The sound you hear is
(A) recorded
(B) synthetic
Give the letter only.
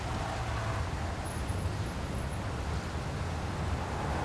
A